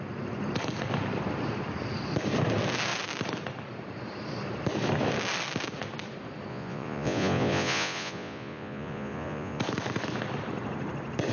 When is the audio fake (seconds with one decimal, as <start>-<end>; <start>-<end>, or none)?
6.5-9.6